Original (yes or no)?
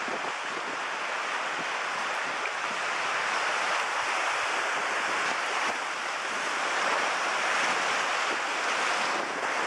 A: yes